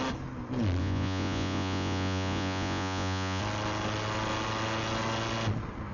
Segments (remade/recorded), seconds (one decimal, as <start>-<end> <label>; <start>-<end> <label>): 0.0-0.8 recorded; 0.8-3.4 remade; 3.4-5.9 recorded